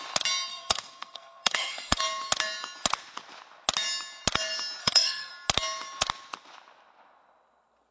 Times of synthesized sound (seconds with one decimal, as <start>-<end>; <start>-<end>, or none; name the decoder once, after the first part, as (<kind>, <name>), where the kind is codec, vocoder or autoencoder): 0.5-2.0 (codec, SNAC); 4.8-5.3